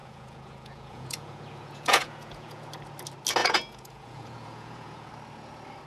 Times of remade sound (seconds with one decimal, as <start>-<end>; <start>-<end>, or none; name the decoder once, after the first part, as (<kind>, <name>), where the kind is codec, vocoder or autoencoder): 0.0-2.7 (vocoder, Vocos); 3.4-5.1